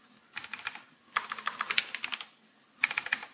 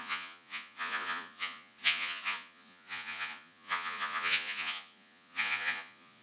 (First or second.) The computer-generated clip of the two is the second